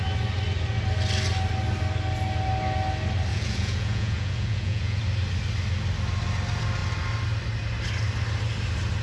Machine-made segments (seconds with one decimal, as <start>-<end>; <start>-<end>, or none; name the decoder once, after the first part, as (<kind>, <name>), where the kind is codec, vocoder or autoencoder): 3.3-5.0 (vocoder, Vocos)